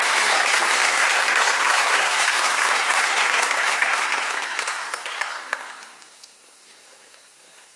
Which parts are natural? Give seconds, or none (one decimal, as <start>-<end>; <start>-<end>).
none